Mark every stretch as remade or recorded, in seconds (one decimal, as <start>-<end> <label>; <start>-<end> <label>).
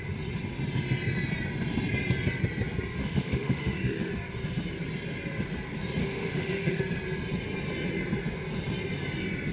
0.0-3.0 recorded; 3.0-4.1 remade; 4.1-6.0 recorded; 6.0-6.8 remade; 6.8-9.5 recorded